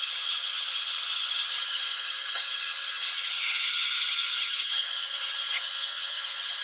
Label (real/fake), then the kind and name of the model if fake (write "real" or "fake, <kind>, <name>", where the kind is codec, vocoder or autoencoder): fake, vocoder, HiFi-GAN